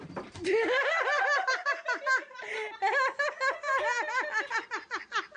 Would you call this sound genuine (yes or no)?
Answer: yes